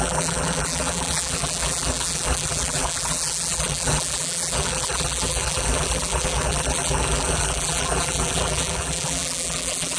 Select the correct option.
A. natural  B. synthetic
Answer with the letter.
B